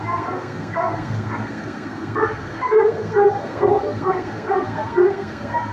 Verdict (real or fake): fake